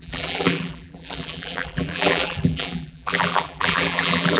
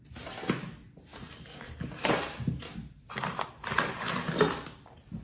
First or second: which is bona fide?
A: second